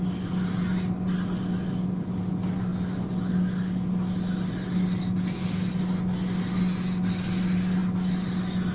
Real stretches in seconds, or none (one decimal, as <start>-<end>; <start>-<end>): 0.0-8.7